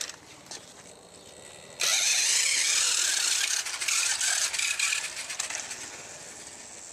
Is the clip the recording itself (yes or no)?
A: yes